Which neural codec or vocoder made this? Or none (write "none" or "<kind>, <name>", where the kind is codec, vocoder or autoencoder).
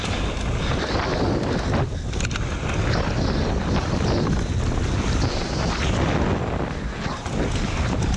none